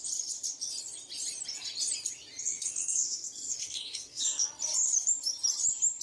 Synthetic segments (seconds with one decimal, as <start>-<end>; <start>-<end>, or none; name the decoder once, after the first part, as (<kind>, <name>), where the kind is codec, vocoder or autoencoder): 2.4-4.5 (codec, SNAC)